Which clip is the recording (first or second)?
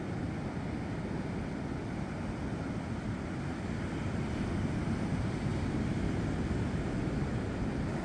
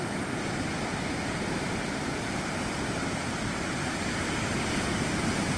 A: first